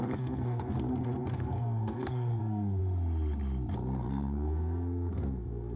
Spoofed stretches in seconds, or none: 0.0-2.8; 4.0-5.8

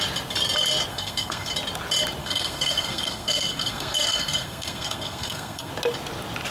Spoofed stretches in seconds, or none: 0.9-1.5; 2.2-5.7

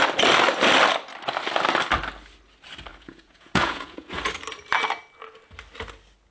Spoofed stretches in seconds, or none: 2.9-4.3

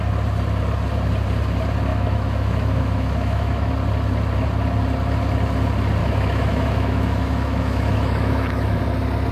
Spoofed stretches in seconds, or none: 1.9-3.7; 6.0-8.8

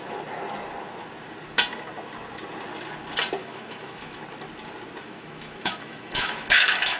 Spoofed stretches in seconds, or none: 3.4-4.2; 5.0-7.0